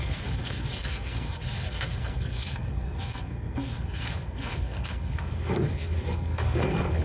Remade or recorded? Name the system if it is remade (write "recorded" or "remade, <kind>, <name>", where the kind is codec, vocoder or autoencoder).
remade, codec, SNAC